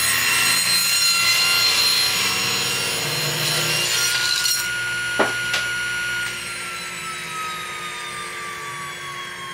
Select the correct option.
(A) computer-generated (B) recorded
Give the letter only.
B